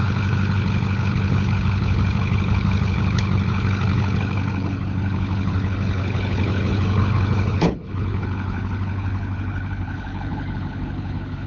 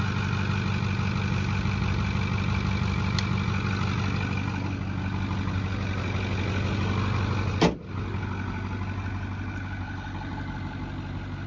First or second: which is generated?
first